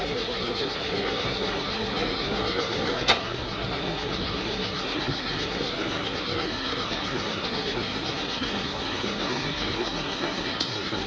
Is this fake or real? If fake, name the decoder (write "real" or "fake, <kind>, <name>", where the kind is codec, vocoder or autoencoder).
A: fake, codec, SNAC